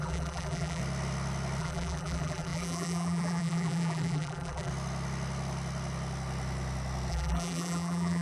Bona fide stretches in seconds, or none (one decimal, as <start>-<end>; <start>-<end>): 0.8-1.6; 4.7-7.1